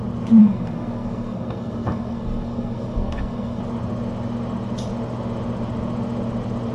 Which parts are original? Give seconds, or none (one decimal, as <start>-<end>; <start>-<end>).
0.0-0.4; 3.6-6.7